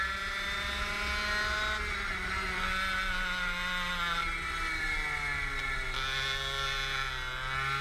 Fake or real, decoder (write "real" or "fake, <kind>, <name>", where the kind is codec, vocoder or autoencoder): real